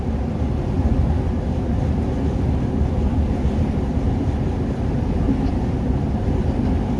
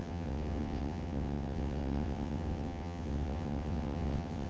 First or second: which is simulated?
second